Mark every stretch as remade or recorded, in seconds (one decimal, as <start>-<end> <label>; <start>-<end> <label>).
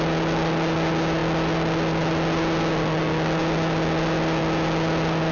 0.0-5.3 recorded